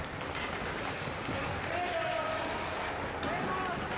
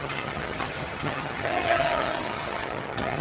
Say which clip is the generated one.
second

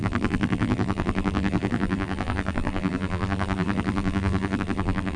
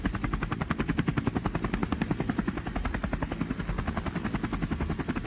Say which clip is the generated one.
first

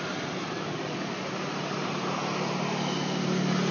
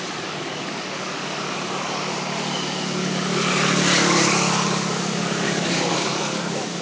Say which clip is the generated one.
second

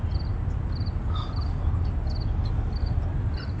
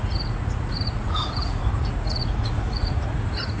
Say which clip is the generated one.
second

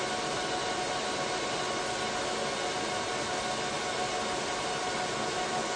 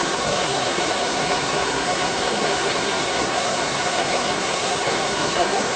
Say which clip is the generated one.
second